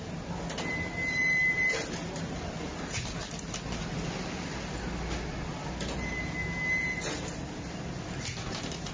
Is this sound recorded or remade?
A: recorded